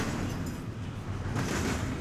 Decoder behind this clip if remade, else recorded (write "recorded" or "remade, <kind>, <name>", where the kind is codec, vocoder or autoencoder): recorded